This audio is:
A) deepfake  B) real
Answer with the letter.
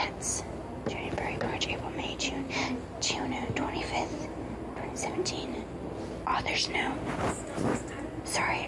B